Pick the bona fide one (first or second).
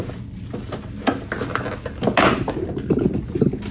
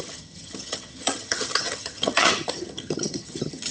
first